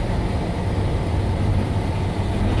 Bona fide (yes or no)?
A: yes